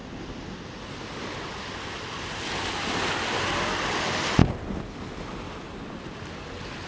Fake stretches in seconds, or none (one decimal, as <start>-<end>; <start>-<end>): none